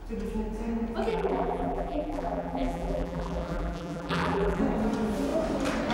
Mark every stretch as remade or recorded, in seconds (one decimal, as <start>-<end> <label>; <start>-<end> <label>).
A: 0.0-1.1 recorded; 1.1-4.6 remade; 4.6-5.9 recorded